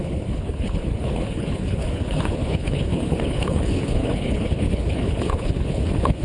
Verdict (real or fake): fake